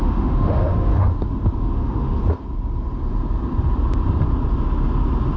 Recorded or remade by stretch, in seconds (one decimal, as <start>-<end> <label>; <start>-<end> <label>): 0.0-0.9 remade; 0.9-1.6 recorded; 1.6-2.2 remade; 2.2-5.4 recorded